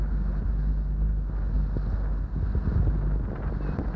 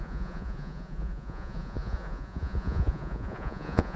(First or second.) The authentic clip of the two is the first